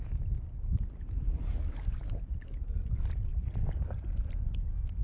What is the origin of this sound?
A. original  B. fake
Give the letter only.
A